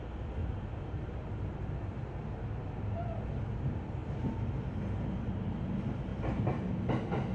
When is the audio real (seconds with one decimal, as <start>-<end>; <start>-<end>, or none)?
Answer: 0.0-0.4; 3.2-6.1; 6.7-7.3